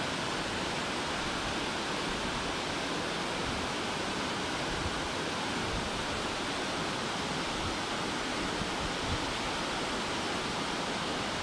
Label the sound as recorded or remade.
recorded